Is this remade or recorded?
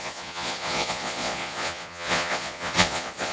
remade